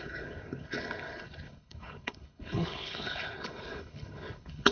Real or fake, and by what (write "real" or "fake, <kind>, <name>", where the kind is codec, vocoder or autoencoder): fake, codec, HILCodec